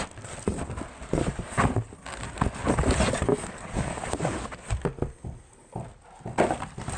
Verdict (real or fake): real